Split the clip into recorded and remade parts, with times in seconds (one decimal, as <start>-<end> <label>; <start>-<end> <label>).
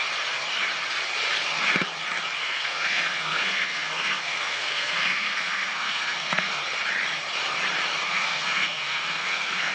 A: 0.0-2.4 recorded; 2.4-6.6 remade; 6.6-8.1 recorded; 8.1-9.7 remade